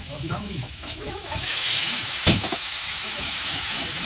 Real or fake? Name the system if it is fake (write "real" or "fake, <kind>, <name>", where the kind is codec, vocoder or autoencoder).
fake, autoencoder, DAC-VAE